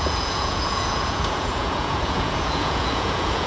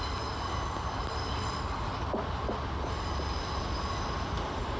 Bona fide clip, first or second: second